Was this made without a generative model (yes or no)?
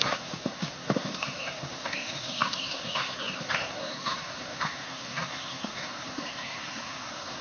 no